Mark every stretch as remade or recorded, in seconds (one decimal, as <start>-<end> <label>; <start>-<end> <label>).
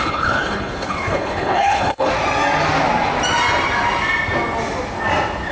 0.0-2.1 remade; 2.1-5.5 recorded